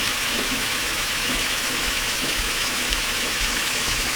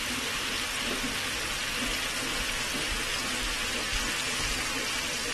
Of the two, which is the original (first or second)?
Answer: second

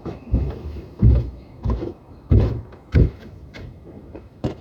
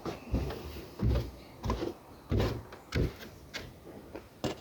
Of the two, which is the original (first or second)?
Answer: second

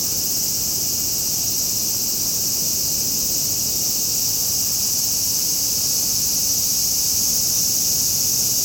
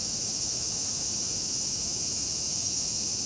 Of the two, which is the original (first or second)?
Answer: first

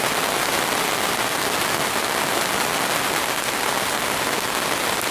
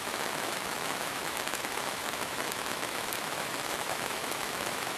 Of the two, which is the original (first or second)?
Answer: first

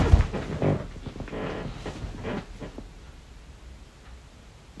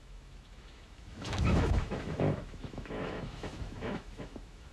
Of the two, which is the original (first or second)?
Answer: first